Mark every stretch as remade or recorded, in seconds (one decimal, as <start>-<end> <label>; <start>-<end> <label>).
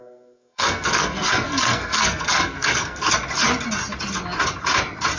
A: 0.0-3.1 remade; 3.1-5.2 recorded